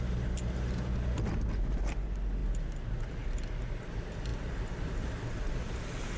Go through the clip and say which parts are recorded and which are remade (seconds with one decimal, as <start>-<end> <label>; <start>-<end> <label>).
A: 0.0-6.2 recorded